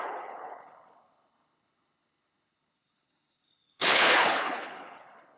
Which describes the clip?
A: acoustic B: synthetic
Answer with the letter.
B